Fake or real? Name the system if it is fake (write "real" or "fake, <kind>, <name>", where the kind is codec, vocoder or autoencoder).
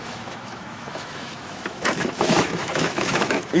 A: fake, autoencoder, DAC-VAE